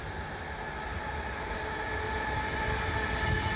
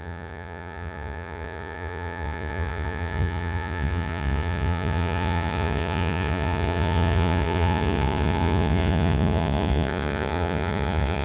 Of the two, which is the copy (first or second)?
second